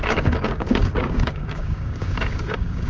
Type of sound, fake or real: fake